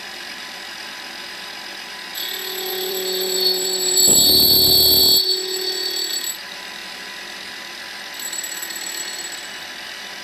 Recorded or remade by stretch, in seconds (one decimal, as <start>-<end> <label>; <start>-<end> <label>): 0.0-2.1 remade; 2.1-2.7 recorded; 2.7-5.0 remade; 5.0-6.1 recorded; 6.1-6.8 remade; 6.8-7.7 recorded; 7.7-10.2 remade